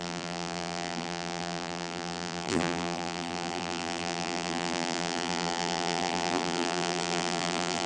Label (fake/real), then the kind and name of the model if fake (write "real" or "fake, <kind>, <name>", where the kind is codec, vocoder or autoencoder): fake, vocoder, BigVGAN v2